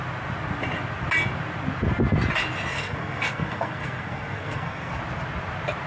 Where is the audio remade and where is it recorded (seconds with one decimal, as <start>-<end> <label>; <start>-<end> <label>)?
0.0-2.7 recorded; 2.7-5.0 remade; 5.0-5.9 recorded